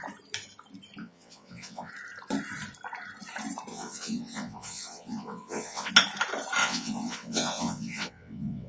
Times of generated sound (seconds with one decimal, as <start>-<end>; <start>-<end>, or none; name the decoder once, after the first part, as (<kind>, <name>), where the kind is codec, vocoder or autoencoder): 1.0-1.9 (vocoder, WaveNeXt); 3.7-5.9; 6.6-8.7